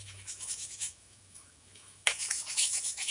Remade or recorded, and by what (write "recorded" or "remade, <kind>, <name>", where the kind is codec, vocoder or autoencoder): remade, autoencoder, DAC-VAE